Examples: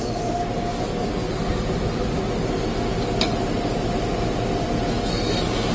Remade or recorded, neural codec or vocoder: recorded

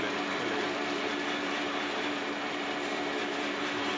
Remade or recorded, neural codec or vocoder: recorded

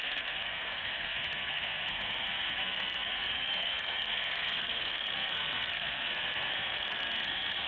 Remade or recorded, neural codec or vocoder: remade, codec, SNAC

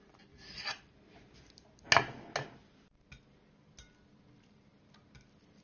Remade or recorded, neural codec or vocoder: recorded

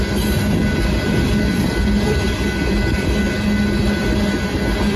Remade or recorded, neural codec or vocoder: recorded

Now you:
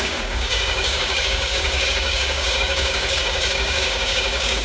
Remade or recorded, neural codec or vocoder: remade, codec, DAC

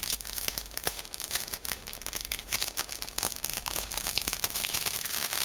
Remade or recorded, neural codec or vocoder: remade, autoencoder, DAC-VAE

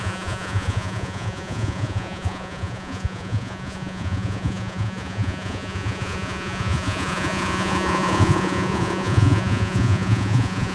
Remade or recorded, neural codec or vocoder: remade, vocoder, Vocos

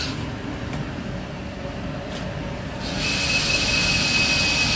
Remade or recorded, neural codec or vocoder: recorded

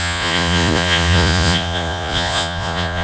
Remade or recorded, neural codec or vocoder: remade, vocoder, Vocos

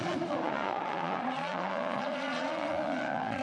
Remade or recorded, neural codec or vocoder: remade, vocoder, Vocos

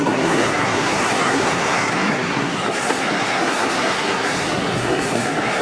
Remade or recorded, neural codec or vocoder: remade, codec, SNAC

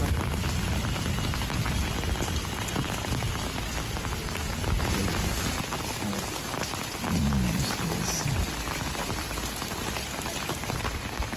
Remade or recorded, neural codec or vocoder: recorded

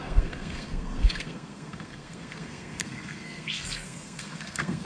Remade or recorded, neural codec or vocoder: remade, codec, SNAC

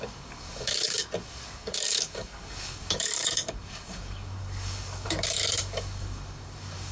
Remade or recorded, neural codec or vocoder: remade, codec, DAC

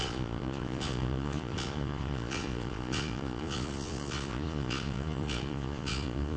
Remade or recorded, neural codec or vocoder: remade, vocoder, Vocos